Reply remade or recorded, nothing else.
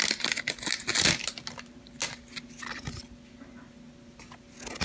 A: recorded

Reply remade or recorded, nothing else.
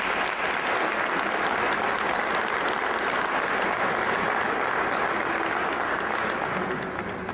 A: recorded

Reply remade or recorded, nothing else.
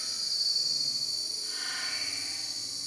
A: recorded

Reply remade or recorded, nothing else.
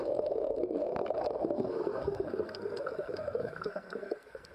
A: remade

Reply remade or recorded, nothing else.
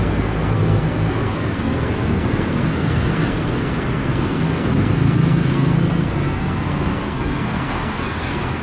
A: remade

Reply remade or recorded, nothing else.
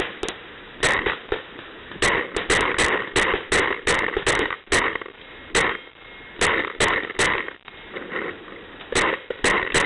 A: recorded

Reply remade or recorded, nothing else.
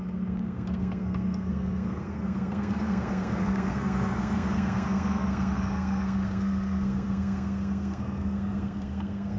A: remade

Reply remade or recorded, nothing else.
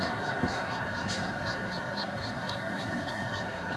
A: remade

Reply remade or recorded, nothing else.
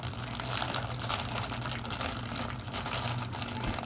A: recorded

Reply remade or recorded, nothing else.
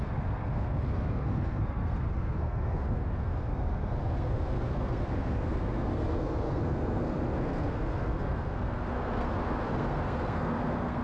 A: remade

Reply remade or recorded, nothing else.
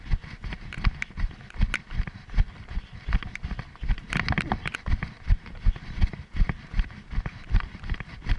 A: recorded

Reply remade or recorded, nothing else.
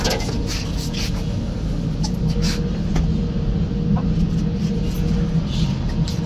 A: recorded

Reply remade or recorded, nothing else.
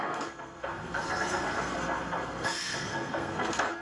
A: remade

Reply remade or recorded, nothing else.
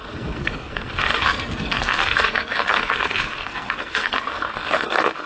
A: remade